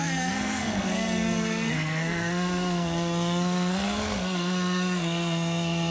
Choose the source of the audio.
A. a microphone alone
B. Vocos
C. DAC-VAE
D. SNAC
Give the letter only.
D